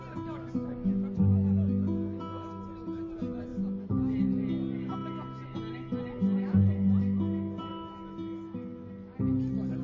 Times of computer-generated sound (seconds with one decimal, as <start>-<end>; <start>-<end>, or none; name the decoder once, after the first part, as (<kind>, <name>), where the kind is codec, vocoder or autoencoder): none